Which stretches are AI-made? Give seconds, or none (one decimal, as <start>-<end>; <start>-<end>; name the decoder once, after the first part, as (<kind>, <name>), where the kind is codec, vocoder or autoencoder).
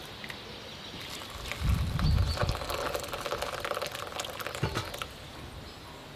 none